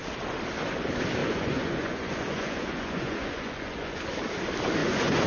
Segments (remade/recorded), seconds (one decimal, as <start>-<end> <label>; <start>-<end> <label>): 0.0-1.2 recorded; 1.2-4.0 remade; 4.0-4.8 recorded; 4.8-5.3 remade